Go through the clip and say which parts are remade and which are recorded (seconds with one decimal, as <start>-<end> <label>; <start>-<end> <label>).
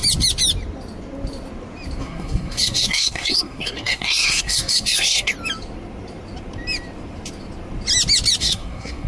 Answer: 0.0-2.0 recorded; 2.0-5.3 remade; 5.3-8.4 recorded; 8.4-9.1 remade